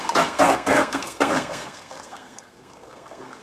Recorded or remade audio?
remade